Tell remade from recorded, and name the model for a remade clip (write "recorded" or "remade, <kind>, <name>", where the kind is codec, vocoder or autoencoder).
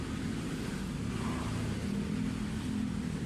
recorded